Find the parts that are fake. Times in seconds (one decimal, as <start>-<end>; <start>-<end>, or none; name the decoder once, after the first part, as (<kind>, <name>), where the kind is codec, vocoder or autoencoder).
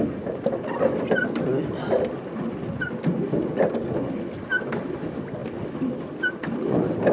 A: none